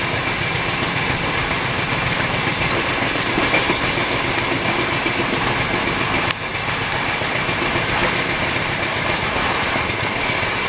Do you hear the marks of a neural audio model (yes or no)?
no